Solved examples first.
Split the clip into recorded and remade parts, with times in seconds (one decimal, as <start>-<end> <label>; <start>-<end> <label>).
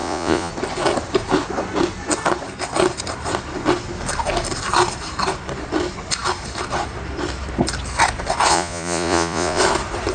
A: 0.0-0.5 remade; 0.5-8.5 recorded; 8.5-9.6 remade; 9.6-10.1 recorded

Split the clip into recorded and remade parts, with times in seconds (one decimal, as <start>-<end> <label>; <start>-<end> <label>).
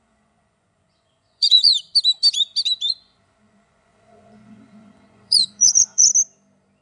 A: 0.0-1.7 remade; 1.7-2.9 recorded; 2.9-6.1 remade; 6.1-6.8 recorded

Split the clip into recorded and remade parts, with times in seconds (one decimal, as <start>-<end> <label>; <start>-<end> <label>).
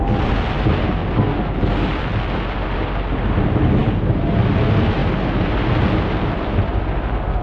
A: 0.0-7.4 recorded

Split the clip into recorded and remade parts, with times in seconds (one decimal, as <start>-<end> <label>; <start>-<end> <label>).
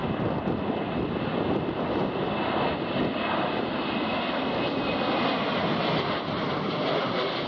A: 0.0-7.5 recorded